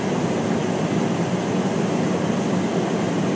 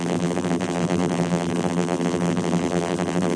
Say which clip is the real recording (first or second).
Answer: first